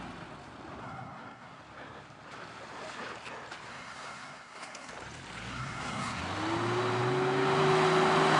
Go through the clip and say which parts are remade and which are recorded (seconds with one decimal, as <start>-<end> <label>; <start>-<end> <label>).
0.0-0.8 recorded; 0.8-1.6 remade; 1.6-3.7 recorded; 3.7-4.9 remade; 4.9-5.5 recorded; 5.5-6.2 remade; 6.2-8.4 recorded